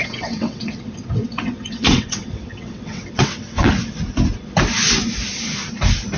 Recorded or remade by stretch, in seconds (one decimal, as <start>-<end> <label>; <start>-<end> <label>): 0.0-3.7 remade; 3.7-6.2 recorded